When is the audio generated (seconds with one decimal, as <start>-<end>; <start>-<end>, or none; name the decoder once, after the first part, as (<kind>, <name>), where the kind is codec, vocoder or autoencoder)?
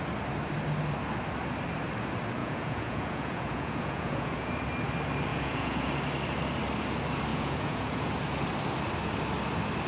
2.4-4.5 (vocoder, Vocos); 5.3-5.9; 7.3-8.1